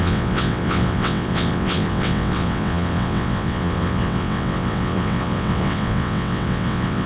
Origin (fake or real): fake